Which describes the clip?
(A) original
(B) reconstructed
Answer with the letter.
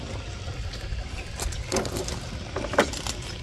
A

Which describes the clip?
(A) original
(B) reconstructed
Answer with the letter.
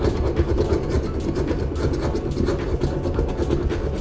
A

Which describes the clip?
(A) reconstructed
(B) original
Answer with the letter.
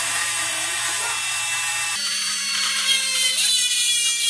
A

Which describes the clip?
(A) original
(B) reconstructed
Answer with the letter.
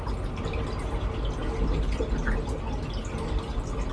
A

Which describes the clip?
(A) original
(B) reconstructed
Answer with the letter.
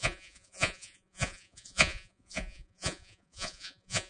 B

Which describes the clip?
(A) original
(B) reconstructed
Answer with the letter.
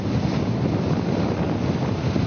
A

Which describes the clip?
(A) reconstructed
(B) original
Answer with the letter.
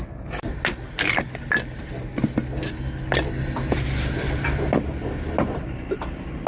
B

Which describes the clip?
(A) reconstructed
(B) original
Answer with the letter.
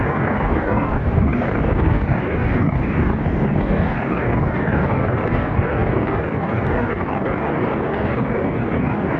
A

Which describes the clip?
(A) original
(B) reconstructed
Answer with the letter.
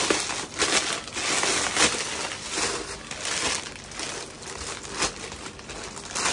A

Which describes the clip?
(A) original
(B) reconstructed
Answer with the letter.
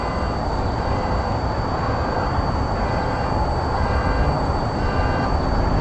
B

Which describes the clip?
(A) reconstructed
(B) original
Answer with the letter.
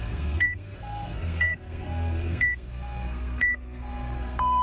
A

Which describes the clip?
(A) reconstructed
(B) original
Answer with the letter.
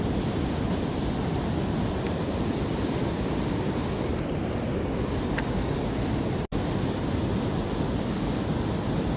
B